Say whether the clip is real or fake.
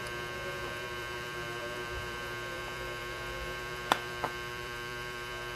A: fake